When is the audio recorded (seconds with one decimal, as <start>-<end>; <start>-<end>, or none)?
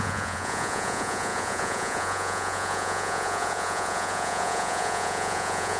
none